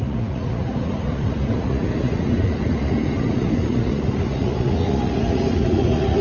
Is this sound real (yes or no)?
no